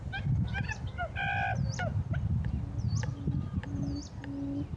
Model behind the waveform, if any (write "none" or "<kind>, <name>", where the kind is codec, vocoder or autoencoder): none